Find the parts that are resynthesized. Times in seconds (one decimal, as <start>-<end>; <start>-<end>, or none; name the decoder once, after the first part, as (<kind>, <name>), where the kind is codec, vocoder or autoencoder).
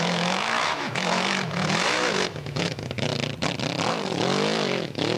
0.0-3.1 (autoencoder, DAC-VAE); 3.9-5.2